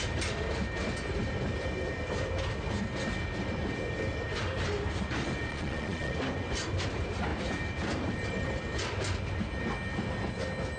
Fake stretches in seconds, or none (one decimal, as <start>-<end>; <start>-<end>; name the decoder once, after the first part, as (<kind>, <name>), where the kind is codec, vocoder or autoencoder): 5.5-6.1 (vocoder, Vocos)